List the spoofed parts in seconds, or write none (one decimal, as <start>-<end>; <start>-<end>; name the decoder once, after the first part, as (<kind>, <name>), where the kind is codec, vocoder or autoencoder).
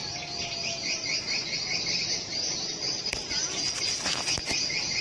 none